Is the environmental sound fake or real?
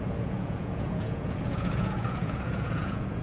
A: fake